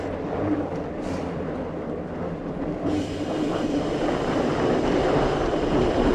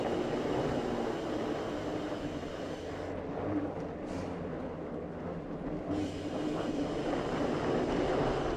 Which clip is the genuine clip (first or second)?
second